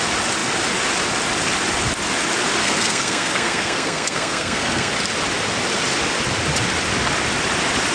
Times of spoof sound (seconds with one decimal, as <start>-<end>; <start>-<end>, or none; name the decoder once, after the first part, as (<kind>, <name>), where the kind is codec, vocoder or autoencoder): 2.6-4.9 (codec, SNAC)